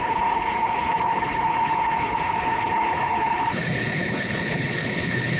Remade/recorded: remade